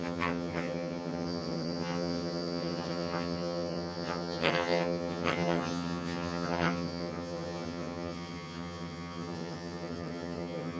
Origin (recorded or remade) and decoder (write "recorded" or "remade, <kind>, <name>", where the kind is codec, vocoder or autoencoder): remade, vocoder, HiFi-GAN